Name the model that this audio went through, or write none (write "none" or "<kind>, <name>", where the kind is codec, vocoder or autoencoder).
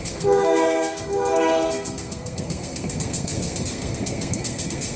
codec, SNAC